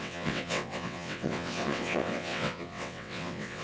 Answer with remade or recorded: remade